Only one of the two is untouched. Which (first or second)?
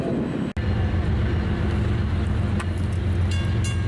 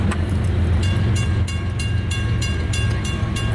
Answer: first